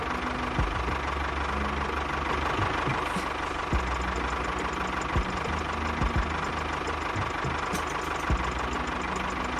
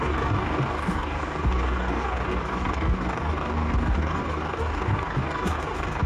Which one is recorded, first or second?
first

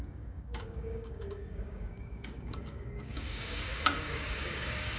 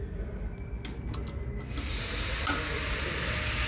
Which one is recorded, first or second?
second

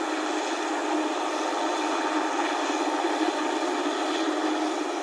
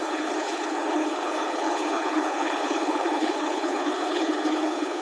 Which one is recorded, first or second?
first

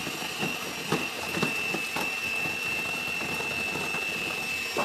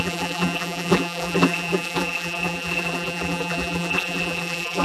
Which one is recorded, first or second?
first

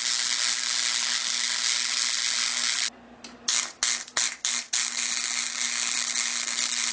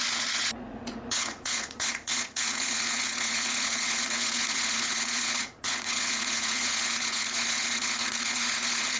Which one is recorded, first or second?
first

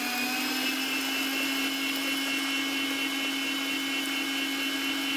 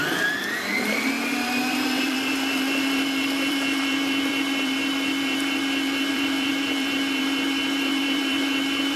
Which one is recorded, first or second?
first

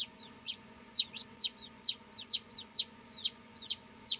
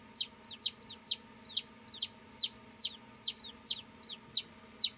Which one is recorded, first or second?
second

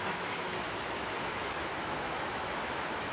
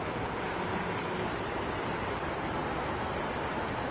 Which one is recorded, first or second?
second